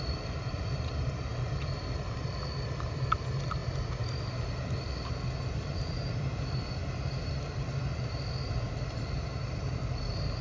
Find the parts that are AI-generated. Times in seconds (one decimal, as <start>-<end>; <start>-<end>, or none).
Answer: 0.0-1.3; 2.8-3.6; 5.4-10.4

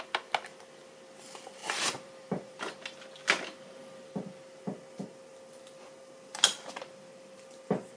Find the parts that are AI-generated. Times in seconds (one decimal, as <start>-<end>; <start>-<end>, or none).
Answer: 1.6-2.6

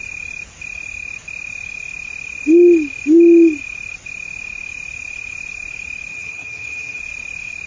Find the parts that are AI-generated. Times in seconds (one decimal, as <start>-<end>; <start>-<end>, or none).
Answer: 6.1-7.0

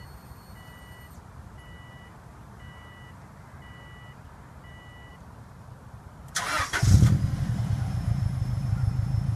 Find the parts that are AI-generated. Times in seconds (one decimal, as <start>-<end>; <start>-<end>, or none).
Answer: 5.1-8.8

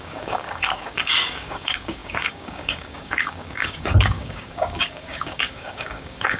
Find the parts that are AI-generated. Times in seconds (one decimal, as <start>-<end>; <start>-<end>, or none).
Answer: 0.0-6.4

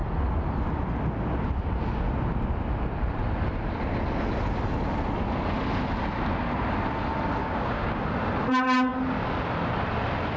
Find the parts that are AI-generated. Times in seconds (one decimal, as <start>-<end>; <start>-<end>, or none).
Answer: 7.4-8.0

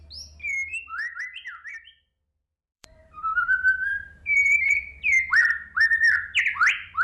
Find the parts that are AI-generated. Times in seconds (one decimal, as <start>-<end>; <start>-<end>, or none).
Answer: 0.7-1.9; 2.6-5.4

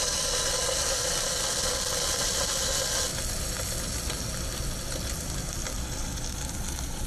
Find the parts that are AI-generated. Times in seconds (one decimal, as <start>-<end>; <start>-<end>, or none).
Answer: none